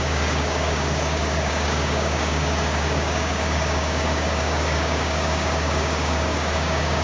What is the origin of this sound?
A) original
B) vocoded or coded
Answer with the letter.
B